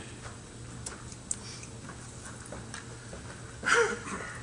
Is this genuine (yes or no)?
yes